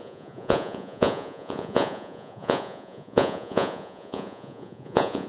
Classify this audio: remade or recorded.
remade